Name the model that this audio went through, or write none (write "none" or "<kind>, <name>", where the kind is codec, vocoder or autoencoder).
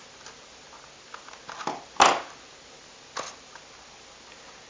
none